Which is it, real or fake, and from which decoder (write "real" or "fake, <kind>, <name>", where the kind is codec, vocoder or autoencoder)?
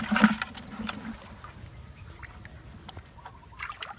real